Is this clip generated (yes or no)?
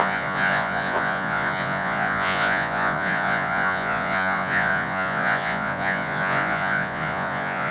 yes